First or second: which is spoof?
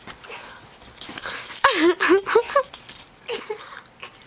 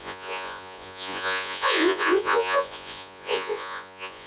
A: second